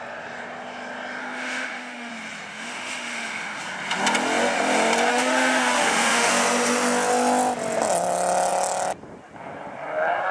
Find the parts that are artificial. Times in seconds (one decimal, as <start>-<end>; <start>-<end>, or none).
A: 1.2-2.1; 2.5-3.6; 5.1-6.3

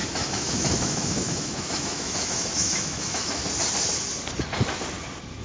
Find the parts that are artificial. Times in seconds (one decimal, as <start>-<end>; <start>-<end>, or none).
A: 0.0-3.4

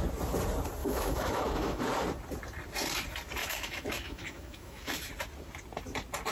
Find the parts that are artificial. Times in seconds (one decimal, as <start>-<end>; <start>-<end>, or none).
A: 0.8-1.8; 3.4-5.1

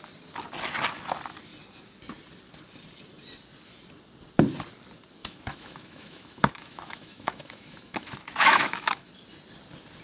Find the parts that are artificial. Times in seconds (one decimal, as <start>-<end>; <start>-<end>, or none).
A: 5.2-9.1

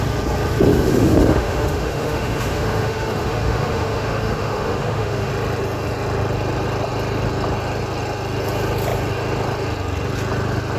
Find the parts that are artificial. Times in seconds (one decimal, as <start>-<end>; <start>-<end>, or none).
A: 0.7-5.3

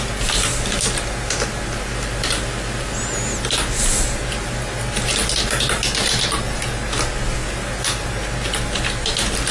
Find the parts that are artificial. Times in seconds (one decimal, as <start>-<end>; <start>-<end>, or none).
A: none

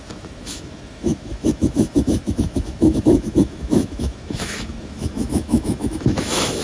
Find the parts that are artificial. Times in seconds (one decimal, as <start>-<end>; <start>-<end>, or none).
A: 0.0-6.6

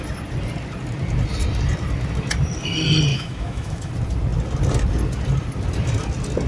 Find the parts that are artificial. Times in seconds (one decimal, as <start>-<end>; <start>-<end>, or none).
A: 3.1-3.9